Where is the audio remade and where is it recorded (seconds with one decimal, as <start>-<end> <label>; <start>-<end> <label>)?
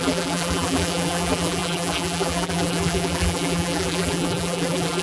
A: 0.0-5.0 remade